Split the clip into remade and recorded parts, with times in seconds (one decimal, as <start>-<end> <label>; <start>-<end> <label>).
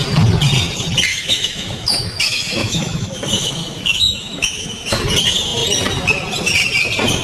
0.0-1.1 recorded; 1.1-5.0 remade; 5.0-7.2 recorded